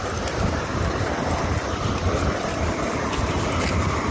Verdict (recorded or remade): recorded